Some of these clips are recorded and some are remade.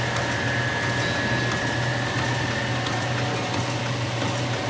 recorded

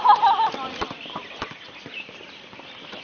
recorded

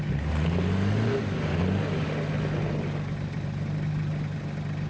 recorded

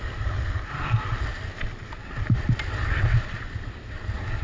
recorded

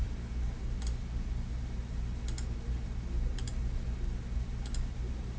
recorded